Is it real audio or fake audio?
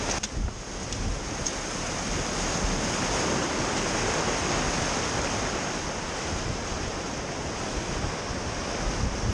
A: real